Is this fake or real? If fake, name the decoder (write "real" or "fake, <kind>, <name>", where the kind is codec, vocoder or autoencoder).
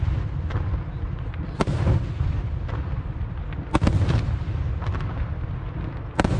real